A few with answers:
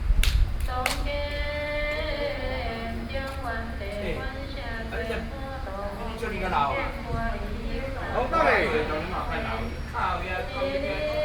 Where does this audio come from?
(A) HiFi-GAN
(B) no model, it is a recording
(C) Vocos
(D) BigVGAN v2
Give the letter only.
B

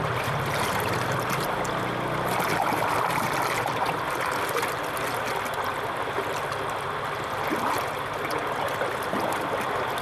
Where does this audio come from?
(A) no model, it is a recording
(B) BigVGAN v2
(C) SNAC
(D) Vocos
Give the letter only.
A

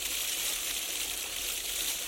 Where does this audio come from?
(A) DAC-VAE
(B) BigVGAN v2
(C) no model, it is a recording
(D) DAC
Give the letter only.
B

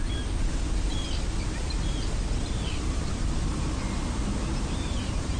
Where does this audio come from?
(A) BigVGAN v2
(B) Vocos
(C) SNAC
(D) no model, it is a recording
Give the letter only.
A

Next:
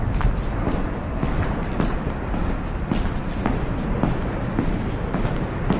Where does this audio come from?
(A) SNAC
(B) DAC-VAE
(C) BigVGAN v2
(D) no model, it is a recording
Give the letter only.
C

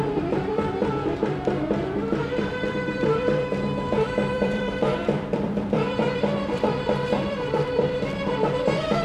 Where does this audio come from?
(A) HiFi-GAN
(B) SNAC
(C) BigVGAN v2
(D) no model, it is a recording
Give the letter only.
C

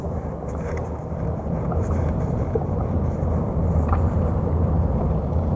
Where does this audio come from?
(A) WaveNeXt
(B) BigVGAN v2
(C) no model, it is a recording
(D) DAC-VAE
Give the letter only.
B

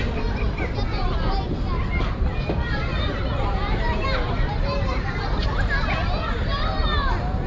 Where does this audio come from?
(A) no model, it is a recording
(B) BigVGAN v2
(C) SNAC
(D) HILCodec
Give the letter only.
A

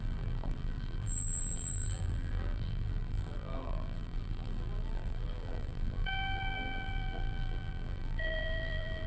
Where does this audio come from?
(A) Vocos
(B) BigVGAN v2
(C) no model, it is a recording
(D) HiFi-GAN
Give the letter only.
B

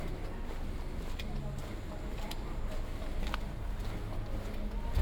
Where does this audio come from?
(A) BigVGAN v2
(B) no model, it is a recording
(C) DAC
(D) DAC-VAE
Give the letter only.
B